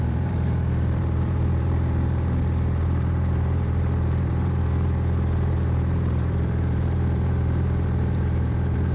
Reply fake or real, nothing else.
fake